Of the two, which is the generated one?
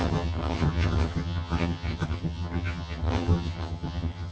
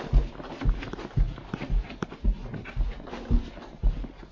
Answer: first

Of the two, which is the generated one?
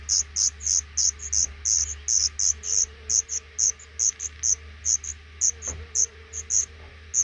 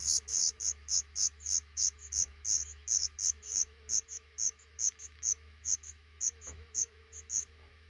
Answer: second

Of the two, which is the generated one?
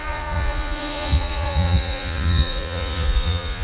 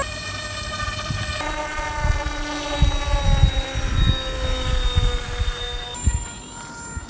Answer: first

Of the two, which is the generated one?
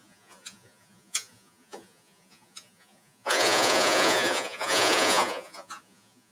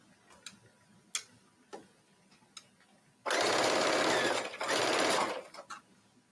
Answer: first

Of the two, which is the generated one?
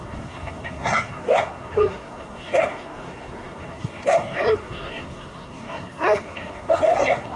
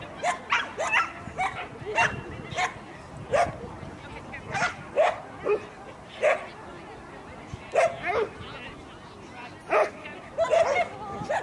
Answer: first